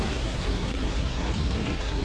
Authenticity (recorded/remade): remade